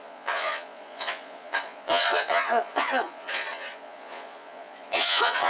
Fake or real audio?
fake